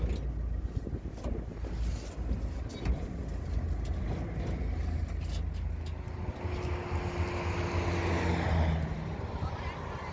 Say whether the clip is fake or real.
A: real